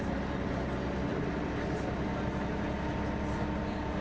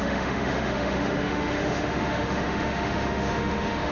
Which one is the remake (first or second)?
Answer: second